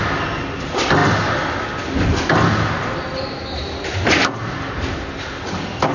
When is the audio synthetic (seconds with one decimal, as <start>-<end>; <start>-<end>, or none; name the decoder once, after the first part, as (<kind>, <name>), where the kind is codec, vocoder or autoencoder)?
none

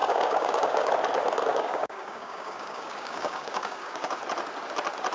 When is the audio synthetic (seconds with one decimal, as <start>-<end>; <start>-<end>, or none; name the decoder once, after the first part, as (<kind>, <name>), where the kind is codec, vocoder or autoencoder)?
0.0-0.9 (codec, DAC); 1.5-4.2

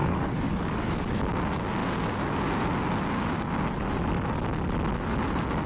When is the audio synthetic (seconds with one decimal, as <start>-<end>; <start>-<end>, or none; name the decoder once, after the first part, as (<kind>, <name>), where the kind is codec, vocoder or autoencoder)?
0.0-1.1 (codec, DAC)

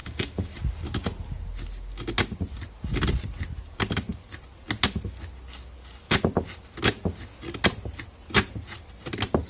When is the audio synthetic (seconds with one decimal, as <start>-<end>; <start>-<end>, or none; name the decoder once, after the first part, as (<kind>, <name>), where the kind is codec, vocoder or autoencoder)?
0.0-0.6 (codec, DAC)